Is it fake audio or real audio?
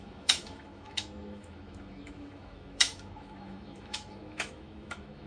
fake